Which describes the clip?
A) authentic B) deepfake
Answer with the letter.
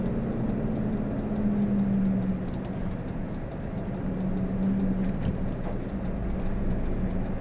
A